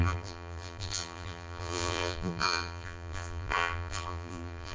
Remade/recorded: remade